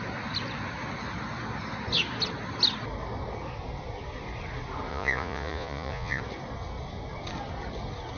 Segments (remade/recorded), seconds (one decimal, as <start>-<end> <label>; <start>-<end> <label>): 0.0-4.9 recorded; 4.9-6.2 remade; 6.2-8.2 recorded